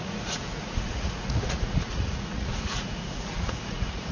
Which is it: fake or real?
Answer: fake